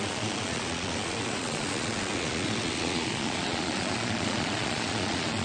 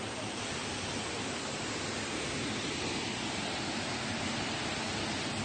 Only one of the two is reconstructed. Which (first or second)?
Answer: first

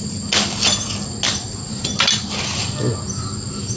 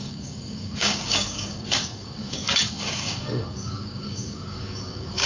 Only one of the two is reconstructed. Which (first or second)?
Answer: second